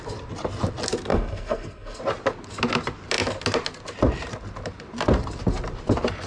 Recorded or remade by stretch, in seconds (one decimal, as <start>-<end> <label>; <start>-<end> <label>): 0.0-1.1 recorded; 1.1-2.0 remade; 2.0-6.3 recorded